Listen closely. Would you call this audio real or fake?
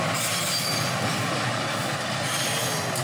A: real